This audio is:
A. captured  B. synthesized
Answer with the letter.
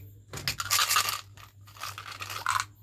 A